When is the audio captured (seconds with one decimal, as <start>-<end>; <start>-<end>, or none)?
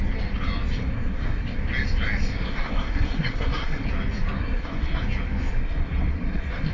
0.0-0.8; 1.6-2.3; 3.9-4.4; 5.0-5.5